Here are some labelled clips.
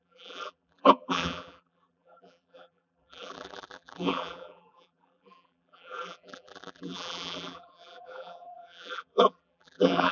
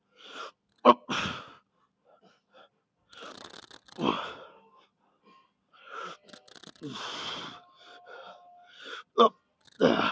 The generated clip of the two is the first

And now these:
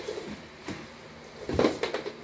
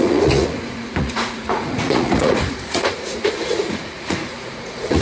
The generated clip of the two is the second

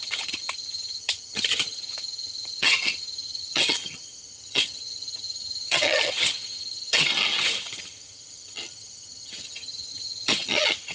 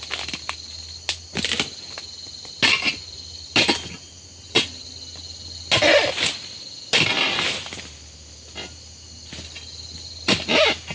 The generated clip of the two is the first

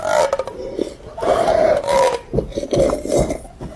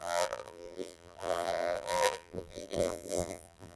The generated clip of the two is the second